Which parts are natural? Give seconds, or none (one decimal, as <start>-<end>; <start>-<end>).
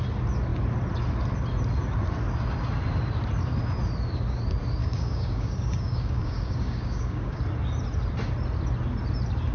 0.0-4.8; 7.4-9.5